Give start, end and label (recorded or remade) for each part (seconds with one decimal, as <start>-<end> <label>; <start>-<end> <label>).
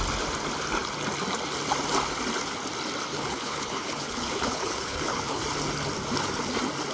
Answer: 0.0-3.1 recorded; 3.1-5.4 remade; 5.4-6.9 recorded